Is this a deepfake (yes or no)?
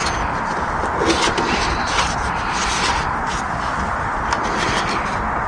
no